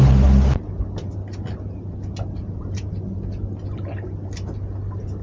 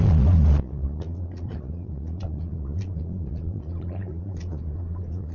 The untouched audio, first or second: first